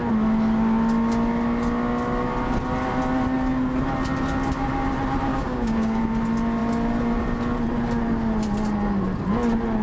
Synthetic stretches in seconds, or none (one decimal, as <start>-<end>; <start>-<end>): 5.3-6.0